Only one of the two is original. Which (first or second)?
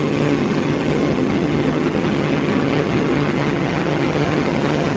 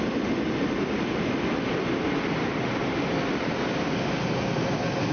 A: second